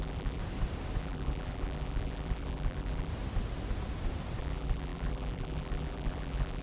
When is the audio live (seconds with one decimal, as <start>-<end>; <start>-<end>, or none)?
0.4-1.0; 3.1-4.4